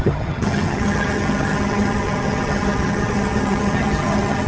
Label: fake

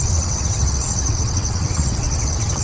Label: fake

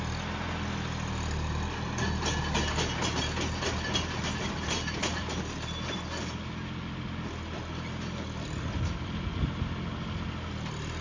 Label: real